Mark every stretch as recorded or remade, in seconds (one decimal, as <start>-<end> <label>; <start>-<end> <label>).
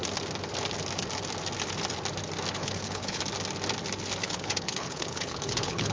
0.0-2.6 recorded; 2.6-3.2 remade; 3.2-4.2 recorded; 4.2-5.9 remade